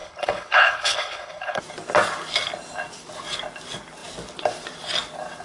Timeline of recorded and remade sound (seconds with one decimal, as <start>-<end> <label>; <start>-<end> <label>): 0.0-1.6 remade; 1.6-5.4 recorded